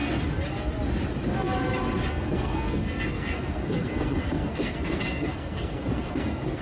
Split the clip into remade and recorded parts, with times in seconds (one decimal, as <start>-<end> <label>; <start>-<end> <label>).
0.0-2.1 recorded; 2.1-6.6 remade

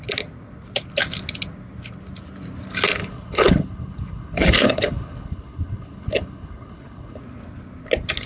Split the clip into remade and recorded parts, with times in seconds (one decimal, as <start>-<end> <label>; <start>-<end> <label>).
0.0-3.0 recorded; 3.0-7.2 remade; 7.2-8.3 recorded

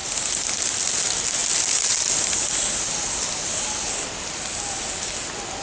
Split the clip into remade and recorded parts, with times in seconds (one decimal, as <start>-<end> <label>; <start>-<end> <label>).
0.0-0.5 remade; 0.5-5.6 recorded

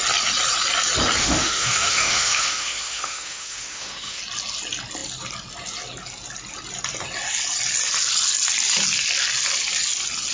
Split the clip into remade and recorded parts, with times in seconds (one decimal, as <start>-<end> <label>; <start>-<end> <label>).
0.0-1.2 recorded; 1.2-4.2 remade; 4.2-10.3 recorded